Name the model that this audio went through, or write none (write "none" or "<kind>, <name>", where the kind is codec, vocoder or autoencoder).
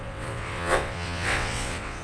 vocoder, WaveNeXt